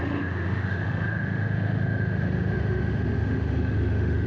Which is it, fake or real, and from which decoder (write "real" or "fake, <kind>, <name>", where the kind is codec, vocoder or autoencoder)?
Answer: fake, autoencoder, DAC-VAE